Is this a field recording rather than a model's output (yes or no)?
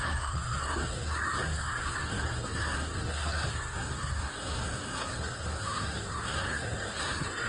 no